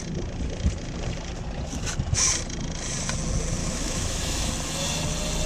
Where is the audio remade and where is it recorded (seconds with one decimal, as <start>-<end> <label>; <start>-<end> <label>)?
0.0-3.6 recorded; 3.6-4.5 remade; 4.5-5.5 recorded